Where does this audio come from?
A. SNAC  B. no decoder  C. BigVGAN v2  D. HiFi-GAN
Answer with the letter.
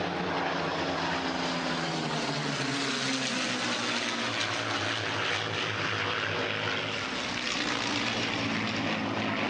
B